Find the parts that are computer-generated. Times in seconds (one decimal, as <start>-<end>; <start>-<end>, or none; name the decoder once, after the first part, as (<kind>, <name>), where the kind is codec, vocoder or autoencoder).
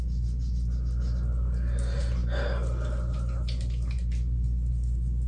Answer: none